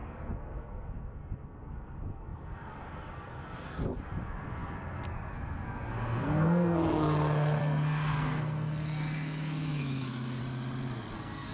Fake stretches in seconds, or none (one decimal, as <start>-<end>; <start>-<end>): 0.0-10.4; 11.1-11.5